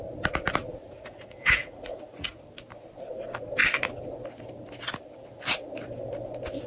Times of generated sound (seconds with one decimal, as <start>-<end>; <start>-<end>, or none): 0.7-2.3